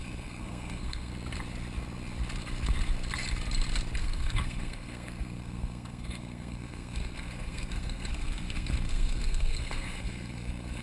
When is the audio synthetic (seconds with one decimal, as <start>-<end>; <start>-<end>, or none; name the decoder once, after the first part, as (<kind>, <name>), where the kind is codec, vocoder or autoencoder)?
0.0-1.1 (codec, SNAC); 4.0-10.8